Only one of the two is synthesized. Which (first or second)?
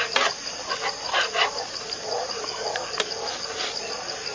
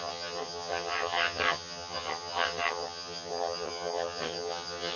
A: second